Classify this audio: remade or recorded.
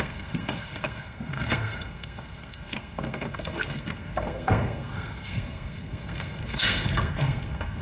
remade